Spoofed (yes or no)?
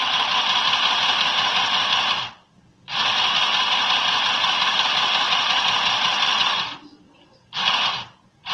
no